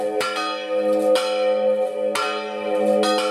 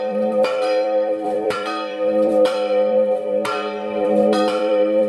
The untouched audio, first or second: first